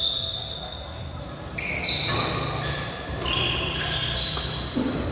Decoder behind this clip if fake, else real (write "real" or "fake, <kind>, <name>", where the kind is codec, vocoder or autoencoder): real